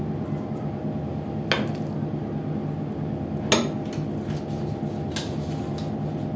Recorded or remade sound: recorded